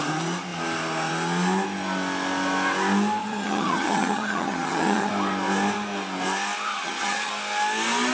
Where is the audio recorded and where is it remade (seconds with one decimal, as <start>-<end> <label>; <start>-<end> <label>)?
0.0-3.2 recorded; 3.2-5.1 remade; 5.1-6.7 recorded; 6.7-7.3 remade; 7.3-8.1 recorded